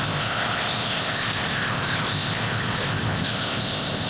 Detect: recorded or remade remade